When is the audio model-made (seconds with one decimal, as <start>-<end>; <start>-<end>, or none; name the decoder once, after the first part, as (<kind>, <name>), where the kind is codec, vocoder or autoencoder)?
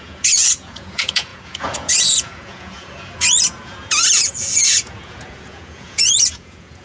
0.0-6.8 (vocoder, Vocos)